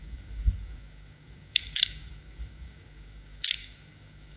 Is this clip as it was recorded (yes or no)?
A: no